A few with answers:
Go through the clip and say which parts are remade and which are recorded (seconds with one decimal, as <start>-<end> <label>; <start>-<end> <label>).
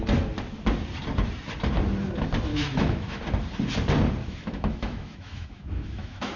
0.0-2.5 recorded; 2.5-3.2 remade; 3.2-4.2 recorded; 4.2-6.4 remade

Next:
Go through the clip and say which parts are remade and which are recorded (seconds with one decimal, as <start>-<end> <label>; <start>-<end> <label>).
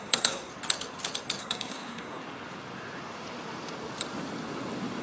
0.0-0.5 remade; 0.5-1.4 recorded; 1.4-2.2 remade; 2.2-5.0 recorded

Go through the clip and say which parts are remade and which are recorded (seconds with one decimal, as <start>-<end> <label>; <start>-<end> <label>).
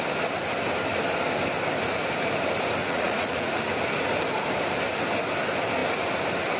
0.0-2.8 recorded; 2.8-3.6 remade; 3.6-6.6 recorded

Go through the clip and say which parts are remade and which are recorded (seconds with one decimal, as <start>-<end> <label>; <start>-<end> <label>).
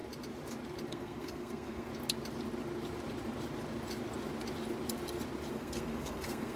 0.0-0.9 recorded; 0.9-1.9 remade; 1.9-5.5 recorded; 5.5-6.6 remade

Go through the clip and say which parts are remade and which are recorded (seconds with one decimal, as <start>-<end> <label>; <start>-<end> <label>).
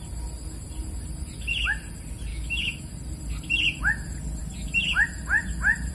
0.0-2.3 recorded; 2.3-2.9 remade; 2.9-5.9 recorded